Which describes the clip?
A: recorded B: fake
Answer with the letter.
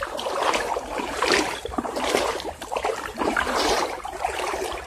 B